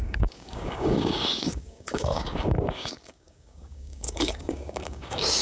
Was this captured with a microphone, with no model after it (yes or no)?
no